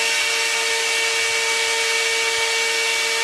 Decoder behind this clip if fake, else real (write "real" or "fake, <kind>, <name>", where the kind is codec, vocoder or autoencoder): real